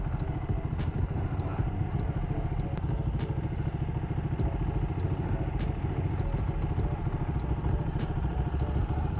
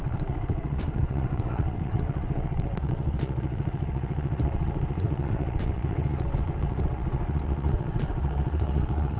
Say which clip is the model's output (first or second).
second